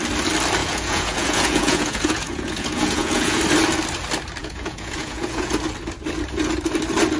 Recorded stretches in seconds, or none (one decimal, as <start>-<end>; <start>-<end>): 0.0-0.6; 3.4-4.4; 5.5-7.2